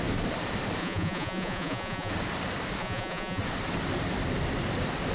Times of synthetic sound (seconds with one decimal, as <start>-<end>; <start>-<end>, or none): 0.8-2.1; 2.8-3.4